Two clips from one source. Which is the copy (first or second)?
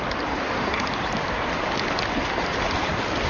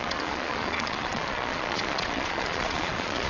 second